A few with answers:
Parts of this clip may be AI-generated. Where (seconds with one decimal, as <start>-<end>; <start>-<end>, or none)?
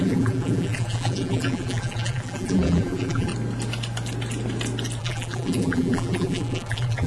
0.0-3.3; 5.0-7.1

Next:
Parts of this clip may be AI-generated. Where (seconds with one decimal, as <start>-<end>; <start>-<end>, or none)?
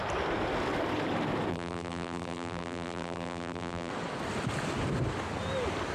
1.5-3.9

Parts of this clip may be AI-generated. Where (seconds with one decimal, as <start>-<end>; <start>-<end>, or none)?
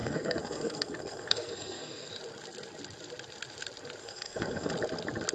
0.0-2.1; 4.0-4.7